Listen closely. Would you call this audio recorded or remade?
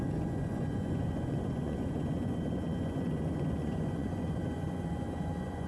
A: remade